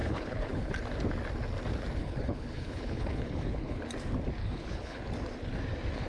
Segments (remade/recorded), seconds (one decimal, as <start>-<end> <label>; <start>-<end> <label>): 0.0-0.7 remade; 0.7-2.0 recorded; 2.0-3.8 remade; 3.8-4.4 recorded; 4.4-5.0 remade; 5.0-6.1 recorded